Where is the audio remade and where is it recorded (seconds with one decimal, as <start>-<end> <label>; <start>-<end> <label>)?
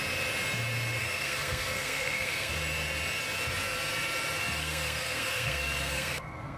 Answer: 0.0-1.0 recorded; 1.0-2.5 remade; 2.5-4.4 recorded; 4.4-6.6 remade